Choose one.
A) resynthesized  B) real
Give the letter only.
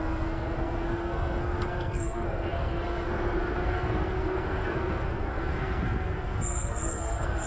A